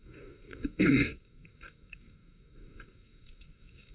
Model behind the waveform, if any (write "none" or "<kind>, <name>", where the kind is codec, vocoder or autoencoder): codec, DAC